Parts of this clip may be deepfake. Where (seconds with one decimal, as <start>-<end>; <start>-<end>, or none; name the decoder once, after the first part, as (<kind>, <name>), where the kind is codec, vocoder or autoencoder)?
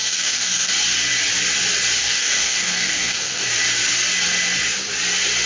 0.0-0.7 (codec, DAC); 2.0-3.5